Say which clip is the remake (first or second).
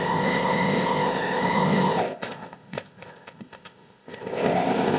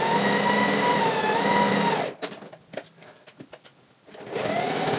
first